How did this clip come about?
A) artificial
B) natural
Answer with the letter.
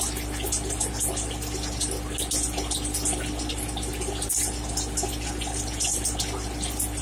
B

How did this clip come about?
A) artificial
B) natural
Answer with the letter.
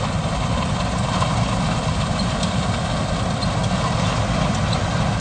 B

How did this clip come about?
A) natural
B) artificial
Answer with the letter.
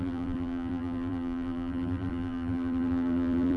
B